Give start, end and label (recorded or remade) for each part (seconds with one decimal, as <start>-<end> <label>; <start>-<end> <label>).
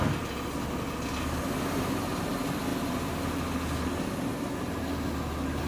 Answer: 0.0-5.7 recorded